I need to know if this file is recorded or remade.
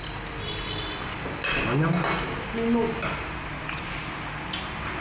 recorded